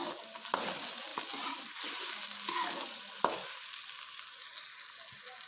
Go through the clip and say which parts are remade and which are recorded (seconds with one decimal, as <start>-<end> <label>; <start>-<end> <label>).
0.0-5.5 recorded